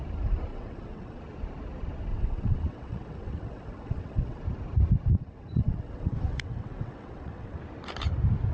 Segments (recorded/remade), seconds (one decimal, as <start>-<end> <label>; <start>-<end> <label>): 0.0-0.5 recorded; 0.5-1.2 remade; 1.2-2.1 recorded; 2.1-4.4 remade; 4.4-5.1 recorded; 5.1-7.6 remade; 7.6-8.5 recorded

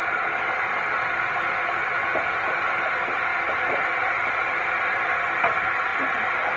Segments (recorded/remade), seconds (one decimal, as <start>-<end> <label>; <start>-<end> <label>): 0.0-6.6 recorded

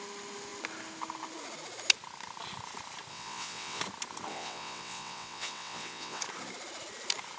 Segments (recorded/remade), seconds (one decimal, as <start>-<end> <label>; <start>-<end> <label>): 0.0-3.1 recorded; 3.1-3.8 remade; 3.8-4.3 recorded; 4.3-6.2 remade; 6.2-7.4 recorded

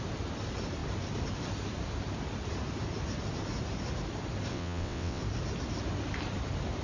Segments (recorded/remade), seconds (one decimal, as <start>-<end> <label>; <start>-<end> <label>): 0.0-4.5 recorded; 4.5-5.2 remade; 5.2-6.8 recorded

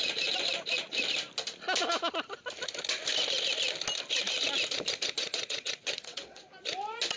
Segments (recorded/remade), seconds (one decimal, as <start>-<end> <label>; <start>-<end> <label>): 0.0-5.2 recorded; 5.2-6.4 remade; 6.4-7.2 recorded

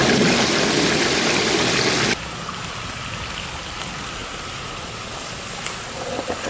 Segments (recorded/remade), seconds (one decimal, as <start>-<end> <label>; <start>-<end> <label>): 0.0-6.5 recorded

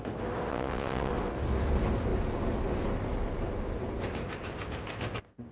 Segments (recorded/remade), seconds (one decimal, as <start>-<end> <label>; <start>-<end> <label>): 0.0-0.5 recorded; 0.5-1.1 remade; 1.1-5.5 recorded

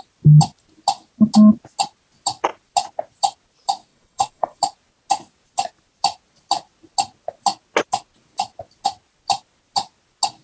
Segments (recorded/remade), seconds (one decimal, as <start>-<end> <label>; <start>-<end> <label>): 0.0-3.9 recorded; 3.9-4.6 remade; 4.6-10.4 recorded